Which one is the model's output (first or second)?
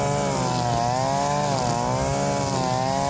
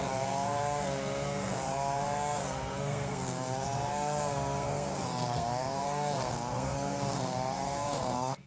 second